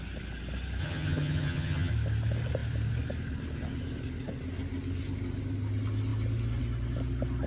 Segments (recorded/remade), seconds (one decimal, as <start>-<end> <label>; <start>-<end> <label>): 0.0-0.8 recorded; 0.8-1.9 remade; 1.9-7.5 recorded